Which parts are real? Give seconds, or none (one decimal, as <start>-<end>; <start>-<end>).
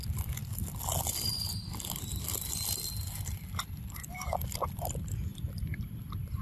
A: none